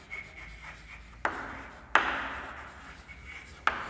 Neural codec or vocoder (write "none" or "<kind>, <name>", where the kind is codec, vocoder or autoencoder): none